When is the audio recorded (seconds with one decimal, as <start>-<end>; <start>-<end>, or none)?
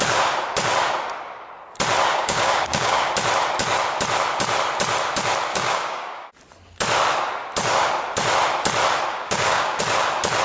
0.0-2.1; 3.1-5.5; 6.3-9.1; 9.8-10.4